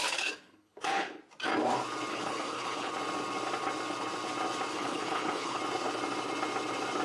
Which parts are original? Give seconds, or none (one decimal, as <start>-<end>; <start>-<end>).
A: 1.2-2.1; 2.9-4.7; 5.6-7.0